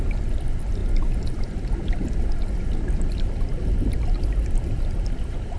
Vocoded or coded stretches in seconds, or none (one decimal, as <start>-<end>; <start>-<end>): none